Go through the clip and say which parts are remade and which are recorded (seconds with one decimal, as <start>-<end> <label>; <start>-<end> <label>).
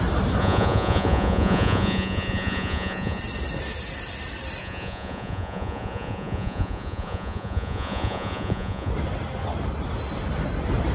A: 0.0-0.4 recorded; 0.4-3.2 remade; 3.2-4.6 recorded; 4.6-8.9 remade; 8.9-10.9 recorded